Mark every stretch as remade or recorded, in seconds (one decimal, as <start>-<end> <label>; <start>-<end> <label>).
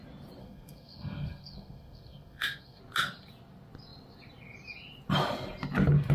0.0-0.4 recorded; 0.4-2.8 remade; 2.8-6.1 recorded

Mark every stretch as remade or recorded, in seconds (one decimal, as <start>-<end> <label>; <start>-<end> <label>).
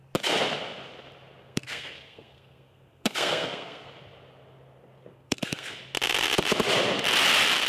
0.0-1.4 recorded; 1.4-3.9 remade; 3.9-5.1 recorded; 5.1-5.8 remade; 5.8-7.7 recorded